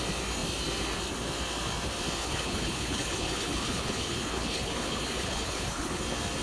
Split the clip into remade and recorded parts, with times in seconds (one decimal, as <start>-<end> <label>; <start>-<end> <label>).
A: 0.0-2.2 recorded; 2.2-6.0 remade; 6.0-6.4 recorded